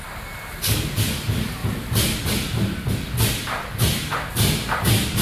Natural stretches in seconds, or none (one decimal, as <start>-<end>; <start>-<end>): 0.0-5.2